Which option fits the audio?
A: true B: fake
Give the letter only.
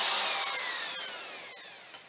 A